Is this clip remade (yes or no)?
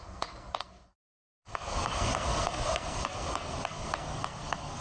yes